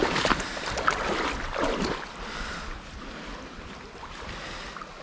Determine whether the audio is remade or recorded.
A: recorded